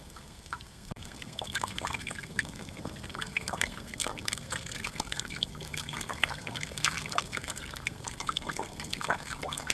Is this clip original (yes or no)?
no